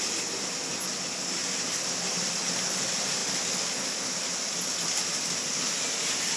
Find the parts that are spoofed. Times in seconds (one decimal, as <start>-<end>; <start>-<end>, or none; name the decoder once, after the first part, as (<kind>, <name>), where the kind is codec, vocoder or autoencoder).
none